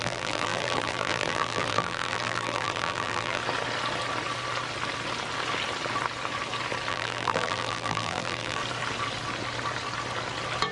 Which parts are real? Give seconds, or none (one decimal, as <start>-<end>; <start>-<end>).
3.4-6.9; 8.6-10.7